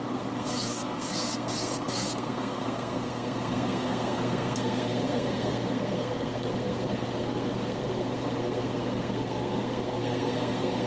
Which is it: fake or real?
fake